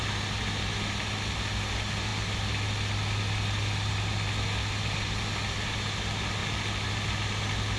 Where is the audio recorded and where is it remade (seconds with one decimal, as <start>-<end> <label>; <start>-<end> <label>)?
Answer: 0.0-7.8 recorded